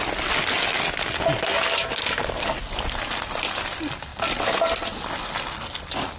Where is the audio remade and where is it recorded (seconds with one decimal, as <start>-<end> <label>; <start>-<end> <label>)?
0.0-6.2 recorded